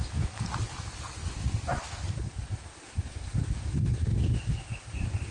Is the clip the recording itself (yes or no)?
yes